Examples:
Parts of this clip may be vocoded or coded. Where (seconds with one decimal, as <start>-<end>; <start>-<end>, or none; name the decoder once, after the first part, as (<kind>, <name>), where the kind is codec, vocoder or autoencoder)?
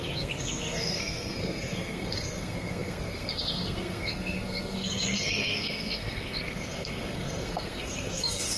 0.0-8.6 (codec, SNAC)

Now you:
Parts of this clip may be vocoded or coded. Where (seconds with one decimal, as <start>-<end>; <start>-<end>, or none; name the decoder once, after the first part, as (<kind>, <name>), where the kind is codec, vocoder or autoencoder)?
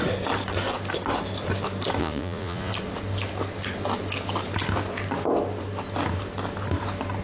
2.0-2.7 (vocoder, Vocos)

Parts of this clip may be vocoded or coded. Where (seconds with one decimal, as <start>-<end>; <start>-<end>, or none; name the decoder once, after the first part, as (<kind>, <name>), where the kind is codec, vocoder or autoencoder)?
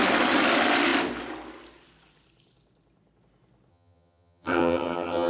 3.7-5.3 (vocoder, HiFi-GAN)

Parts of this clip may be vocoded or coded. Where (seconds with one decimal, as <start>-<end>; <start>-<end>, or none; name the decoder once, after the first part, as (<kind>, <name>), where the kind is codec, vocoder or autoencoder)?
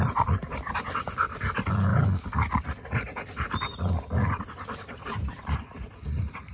0.0-1.9 (vocoder, BigVGAN v2); 4.4-6.5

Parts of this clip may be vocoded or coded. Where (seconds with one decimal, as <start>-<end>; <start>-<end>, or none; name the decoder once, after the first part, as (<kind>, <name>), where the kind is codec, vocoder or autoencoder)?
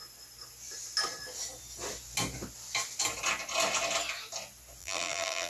4.8-5.5 (vocoder, BigVGAN v2)